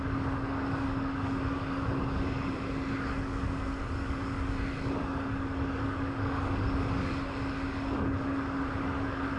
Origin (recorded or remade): remade